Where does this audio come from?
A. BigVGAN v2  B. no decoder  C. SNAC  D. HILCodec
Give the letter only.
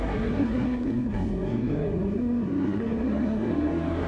C